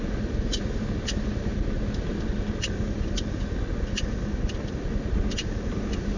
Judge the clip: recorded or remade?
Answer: recorded